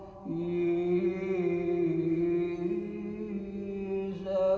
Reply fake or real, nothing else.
real